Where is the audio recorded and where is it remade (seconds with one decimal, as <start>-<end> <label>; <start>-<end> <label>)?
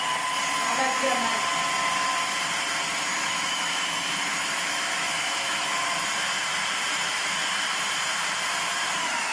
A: 0.0-3.1 recorded; 3.1-6.0 remade; 6.0-6.9 recorded; 6.9-7.9 remade; 7.9-9.3 recorded